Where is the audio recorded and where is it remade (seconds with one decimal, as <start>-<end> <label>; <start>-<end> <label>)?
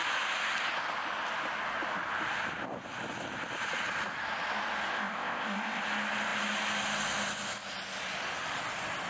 0.0-4.9 recorded; 4.9-5.8 remade; 5.8-9.1 recorded